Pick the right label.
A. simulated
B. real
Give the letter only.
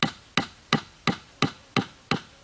B